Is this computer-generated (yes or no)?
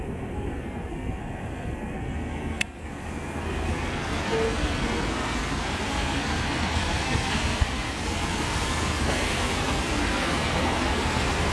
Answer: yes